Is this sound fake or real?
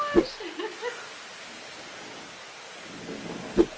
real